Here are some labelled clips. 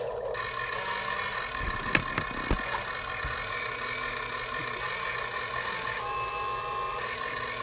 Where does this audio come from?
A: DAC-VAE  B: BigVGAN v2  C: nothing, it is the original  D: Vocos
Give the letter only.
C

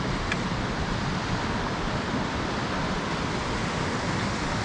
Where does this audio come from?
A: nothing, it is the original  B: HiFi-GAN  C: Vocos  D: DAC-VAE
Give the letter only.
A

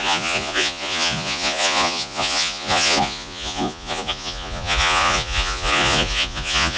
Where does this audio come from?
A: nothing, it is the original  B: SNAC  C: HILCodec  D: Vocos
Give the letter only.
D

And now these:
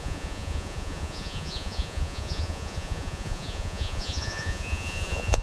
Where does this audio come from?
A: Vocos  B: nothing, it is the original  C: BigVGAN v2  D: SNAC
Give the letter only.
A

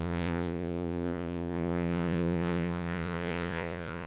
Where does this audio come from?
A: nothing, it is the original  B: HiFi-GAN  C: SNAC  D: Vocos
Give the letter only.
D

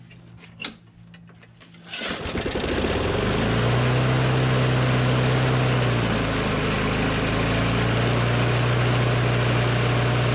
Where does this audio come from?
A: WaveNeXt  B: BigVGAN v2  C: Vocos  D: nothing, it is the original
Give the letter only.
D